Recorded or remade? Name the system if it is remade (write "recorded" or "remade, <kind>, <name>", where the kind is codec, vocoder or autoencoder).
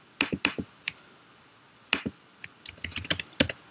remade, vocoder, BigVGAN v2